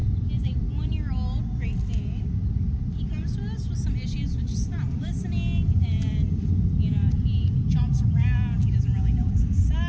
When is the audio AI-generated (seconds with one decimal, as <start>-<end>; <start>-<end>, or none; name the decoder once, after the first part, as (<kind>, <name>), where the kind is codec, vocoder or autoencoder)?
none